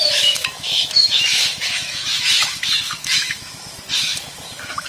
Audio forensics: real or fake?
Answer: fake